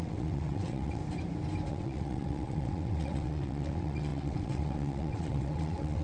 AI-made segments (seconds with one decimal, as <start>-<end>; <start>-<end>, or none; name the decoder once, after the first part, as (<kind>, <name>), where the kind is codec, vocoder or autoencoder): 0.0-1.0 (vocoder, WaveNeXt); 1.7-6.0